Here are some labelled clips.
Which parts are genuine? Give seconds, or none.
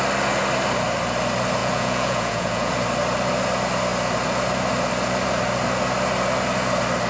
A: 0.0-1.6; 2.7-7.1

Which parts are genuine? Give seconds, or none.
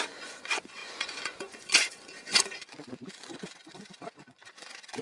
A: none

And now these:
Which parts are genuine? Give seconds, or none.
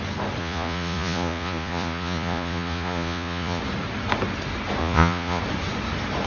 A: 0.0-0.4; 3.6-4.8; 5.4-6.3